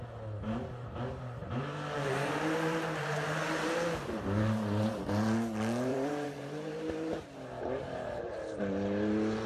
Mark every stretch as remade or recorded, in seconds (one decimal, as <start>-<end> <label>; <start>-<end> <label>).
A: 0.0-1.4 recorded; 1.4-5.1 remade; 5.1-5.9 recorded; 5.9-8.6 remade; 8.6-9.5 recorded